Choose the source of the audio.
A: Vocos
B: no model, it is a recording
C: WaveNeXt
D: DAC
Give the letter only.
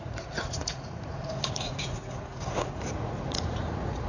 A